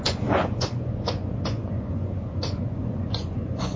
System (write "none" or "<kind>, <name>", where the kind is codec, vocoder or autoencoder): vocoder, Vocos